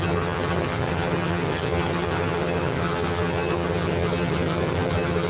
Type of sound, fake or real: fake